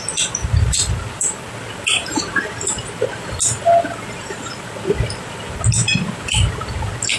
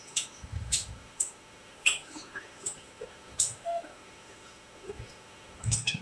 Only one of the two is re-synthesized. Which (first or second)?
second